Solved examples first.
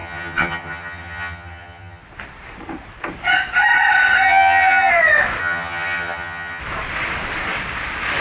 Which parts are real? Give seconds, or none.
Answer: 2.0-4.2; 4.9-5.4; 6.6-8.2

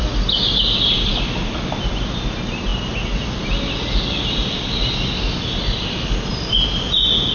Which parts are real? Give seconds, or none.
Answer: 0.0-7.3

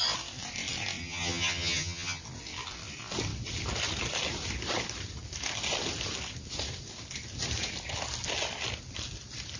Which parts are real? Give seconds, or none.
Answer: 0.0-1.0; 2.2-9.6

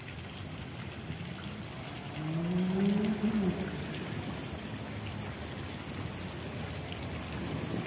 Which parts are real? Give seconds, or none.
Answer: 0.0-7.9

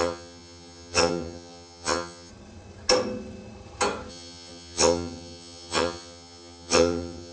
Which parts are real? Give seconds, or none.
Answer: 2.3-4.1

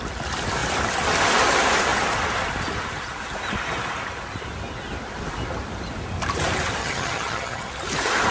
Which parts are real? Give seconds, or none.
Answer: 0.0-6.8; 7.7-8.3

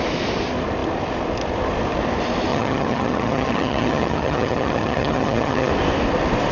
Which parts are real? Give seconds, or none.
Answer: 0.0-2.5; 5.7-6.5

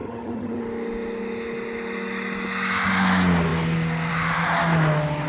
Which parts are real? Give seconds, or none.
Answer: 0.6-5.3